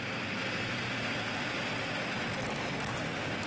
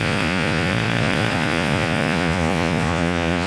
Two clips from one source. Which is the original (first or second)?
first